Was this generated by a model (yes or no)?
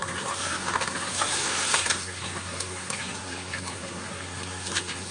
yes